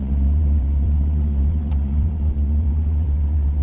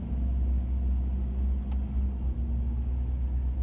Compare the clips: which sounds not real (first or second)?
first